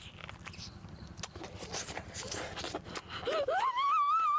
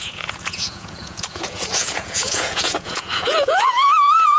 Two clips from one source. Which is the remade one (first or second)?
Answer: second